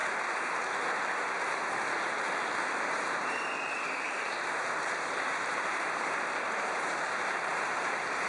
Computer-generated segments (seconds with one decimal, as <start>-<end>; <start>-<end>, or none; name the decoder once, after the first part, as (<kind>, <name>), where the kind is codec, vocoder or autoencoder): 1.3-8.3 (vocoder, BigVGAN v2)